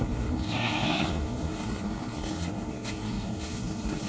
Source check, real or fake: fake